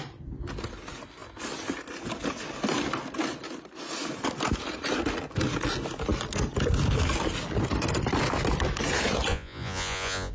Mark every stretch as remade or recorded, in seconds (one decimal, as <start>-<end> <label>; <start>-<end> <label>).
0.0-9.3 recorded; 9.3-10.3 remade